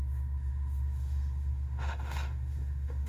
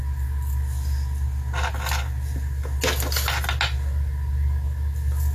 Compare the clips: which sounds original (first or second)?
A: second